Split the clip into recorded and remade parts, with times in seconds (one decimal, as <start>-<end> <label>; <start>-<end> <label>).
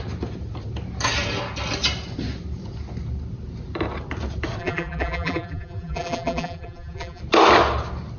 0.0-4.6 recorded; 4.6-7.2 remade; 7.2-8.2 recorded